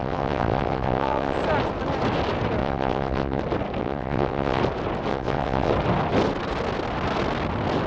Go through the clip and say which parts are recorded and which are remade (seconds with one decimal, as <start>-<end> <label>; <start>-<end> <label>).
0.0-1.4 remade; 1.4-2.6 recorded; 2.6-3.4 remade; 3.4-3.8 recorded; 3.8-4.6 remade; 4.6-5.1 recorded; 5.1-5.7 remade; 5.7-7.9 recorded